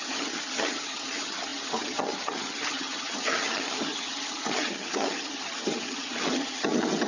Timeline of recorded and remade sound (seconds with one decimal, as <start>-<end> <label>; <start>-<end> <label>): 0.0-7.1 remade

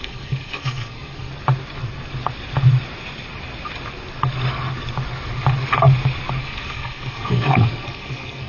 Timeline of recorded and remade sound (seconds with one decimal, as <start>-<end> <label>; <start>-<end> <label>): 0.0-1.3 remade; 1.3-6.4 recorded; 6.4-8.5 remade

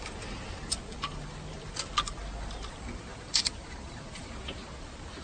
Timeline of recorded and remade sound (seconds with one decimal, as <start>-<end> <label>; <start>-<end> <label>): 0.0-3.1 recorded; 3.1-4.3 remade; 4.3-5.2 recorded

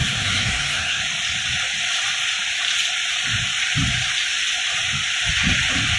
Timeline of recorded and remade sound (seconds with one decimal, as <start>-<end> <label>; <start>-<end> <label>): 0.0-1.0 remade; 1.0-6.0 recorded

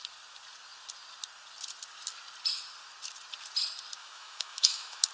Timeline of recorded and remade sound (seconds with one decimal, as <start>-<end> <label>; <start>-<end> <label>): 0.0-4.0 recorded; 4.0-5.1 remade

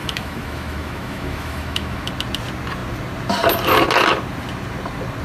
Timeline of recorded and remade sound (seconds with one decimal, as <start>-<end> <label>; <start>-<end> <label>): 0.0-2.1 remade; 2.1-5.2 recorded

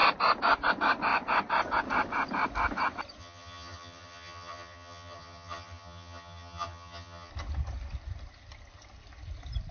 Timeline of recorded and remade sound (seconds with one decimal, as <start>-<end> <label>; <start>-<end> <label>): 0.0-3.2 recorded; 3.2-7.3 remade; 7.3-9.7 recorded